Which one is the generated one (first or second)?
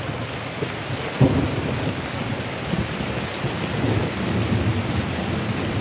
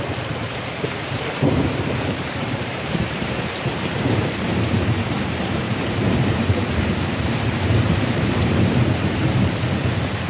second